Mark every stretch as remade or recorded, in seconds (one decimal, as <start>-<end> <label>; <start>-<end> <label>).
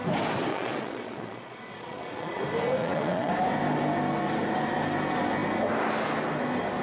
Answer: 0.0-0.5 recorded; 0.5-2.4 remade; 2.4-2.8 recorded; 2.8-3.3 remade; 3.3-6.8 recorded